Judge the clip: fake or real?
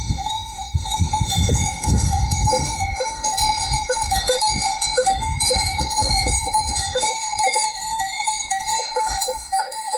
fake